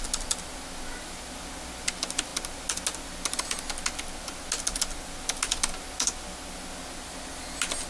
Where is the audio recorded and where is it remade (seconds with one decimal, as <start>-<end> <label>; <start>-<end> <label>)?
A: 0.0-7.9 recorded